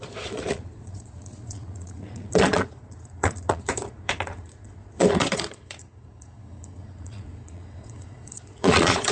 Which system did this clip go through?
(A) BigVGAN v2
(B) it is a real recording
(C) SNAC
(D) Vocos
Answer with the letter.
D